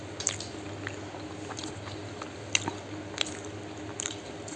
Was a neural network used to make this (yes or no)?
no